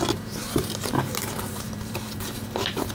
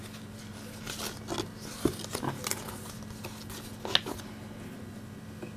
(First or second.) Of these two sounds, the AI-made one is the first